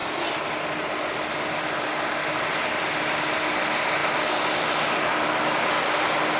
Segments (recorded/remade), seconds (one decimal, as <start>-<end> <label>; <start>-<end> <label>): 0.0-6.4 recorded